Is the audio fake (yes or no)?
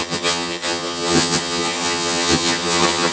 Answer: yes